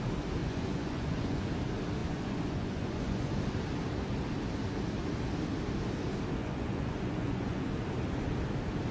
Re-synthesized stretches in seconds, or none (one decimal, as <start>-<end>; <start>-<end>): 0.4-1.5; 2.0-3.3; 6.4-7.7